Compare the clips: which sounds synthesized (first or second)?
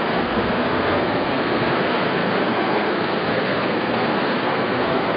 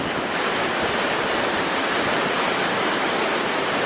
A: first